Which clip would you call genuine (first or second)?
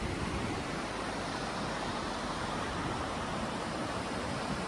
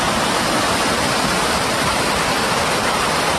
second